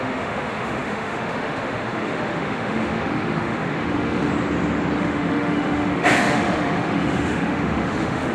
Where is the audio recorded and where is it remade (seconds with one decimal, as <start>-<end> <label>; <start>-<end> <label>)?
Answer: 0.0-4.3 remade; 4.3-5.0 recorded; 5.0-8.3 remade

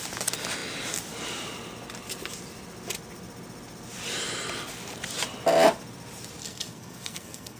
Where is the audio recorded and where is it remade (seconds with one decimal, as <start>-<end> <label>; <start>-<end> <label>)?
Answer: 0.0-6.4 recorded; 6.4-7.6 remade

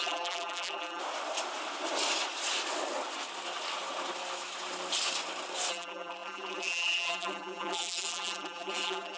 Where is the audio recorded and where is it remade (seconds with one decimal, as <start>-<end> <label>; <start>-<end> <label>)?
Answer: 0.0-1.0 remade; 1.0-5.7 recorded; 5.7-9.2 remade